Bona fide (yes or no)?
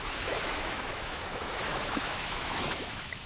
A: no